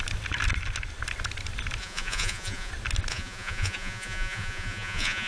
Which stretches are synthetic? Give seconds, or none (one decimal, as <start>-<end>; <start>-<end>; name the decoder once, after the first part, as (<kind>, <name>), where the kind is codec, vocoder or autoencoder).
1.8-2.7 (vocoder, Vocos); 3.1-5.3